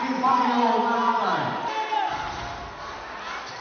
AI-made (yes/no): no